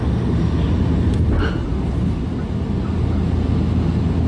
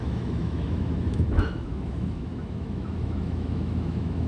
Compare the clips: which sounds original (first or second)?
first